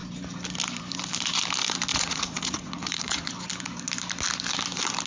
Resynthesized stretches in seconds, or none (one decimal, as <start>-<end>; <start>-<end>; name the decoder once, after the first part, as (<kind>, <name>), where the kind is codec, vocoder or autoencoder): 1.9-3.3 (vocoder, Vocos)

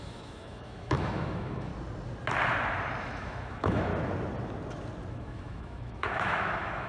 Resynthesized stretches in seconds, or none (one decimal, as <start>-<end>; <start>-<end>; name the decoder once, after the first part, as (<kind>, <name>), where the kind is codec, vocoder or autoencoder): 0.0-1.7 (autoencoder, DAC-VAE); 3.0-3.9; 5.1-6.9

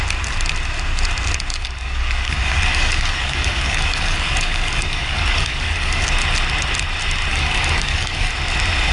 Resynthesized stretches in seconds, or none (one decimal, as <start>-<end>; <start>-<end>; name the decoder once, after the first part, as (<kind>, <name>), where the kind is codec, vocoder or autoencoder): 1.5-6.1 (codec, DAC); 7.3-8.3